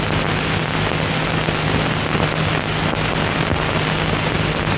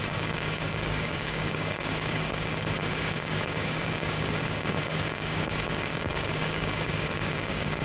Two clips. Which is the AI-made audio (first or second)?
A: second